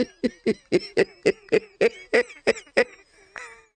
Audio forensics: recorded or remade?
recorded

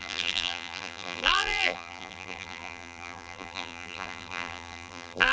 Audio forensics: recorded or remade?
remade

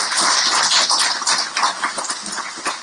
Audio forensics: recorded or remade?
recorded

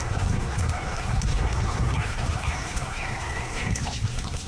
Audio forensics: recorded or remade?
remade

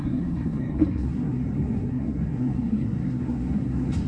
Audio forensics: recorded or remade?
remade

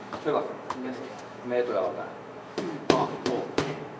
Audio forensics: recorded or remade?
remade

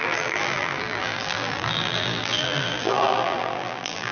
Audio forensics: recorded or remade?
remade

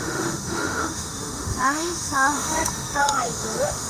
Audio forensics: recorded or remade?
remade